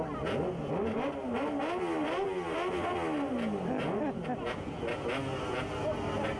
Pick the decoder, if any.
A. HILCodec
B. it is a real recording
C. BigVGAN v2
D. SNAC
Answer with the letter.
B